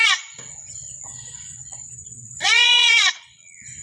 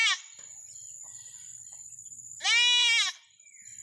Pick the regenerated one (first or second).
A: first